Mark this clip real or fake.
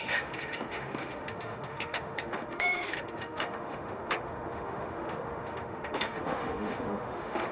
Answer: fake